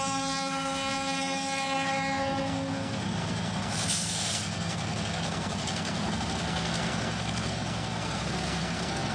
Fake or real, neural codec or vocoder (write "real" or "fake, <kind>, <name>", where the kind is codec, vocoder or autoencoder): fake, codec, SNAC